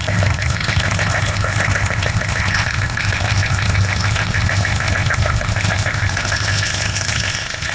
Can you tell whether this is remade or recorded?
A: remade